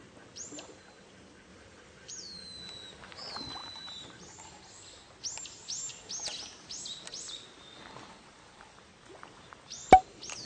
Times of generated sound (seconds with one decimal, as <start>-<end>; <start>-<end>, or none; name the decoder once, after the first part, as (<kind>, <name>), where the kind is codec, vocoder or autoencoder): 1.5-2.1 (vocoder, BigVGAN v2); 3.6-4.5